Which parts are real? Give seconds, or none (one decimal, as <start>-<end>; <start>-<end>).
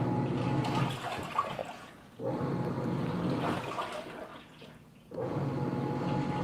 0.0-1.6; 2.2-4.3; 5.5-6.4